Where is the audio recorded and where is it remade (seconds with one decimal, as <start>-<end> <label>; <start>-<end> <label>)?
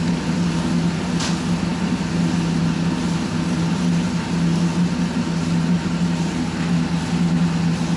0.0-8.0 recorded